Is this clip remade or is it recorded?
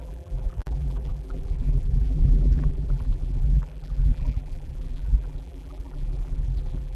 remade